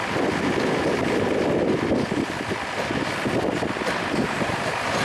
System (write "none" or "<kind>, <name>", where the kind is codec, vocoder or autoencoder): none